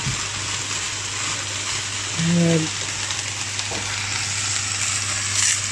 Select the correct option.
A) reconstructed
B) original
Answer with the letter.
B